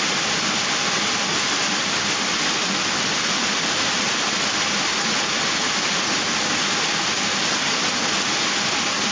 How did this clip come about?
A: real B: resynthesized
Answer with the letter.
A